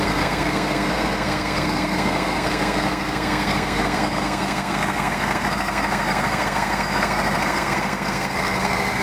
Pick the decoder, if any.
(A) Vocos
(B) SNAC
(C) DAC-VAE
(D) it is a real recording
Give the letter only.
B